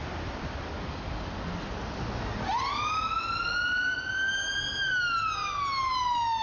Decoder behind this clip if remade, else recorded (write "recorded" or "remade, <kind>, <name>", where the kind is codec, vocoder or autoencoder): recorded